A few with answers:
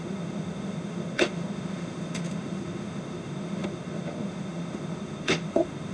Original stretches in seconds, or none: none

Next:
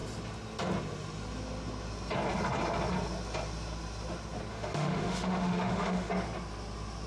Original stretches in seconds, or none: 0.0-4.5; 6.1-7.1

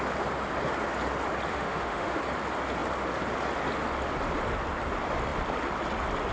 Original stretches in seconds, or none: 0.0-1.5; 2.2-6.3

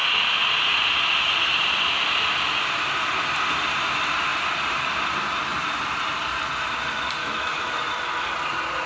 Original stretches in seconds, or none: 0.0-7.2; 7.7-8.9